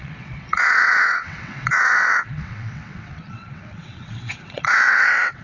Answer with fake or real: fake